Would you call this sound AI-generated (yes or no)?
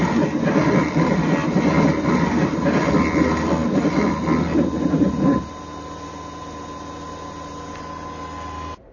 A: no